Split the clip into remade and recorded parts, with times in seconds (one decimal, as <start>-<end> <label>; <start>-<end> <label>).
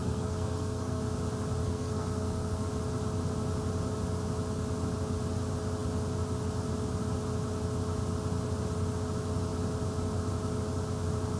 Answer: 0.0-1.0 remade; 1.0-1.6 recorded; 1.6-2.7 remade; 2.7-11.4 recorded